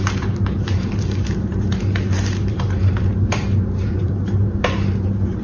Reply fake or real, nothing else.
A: fake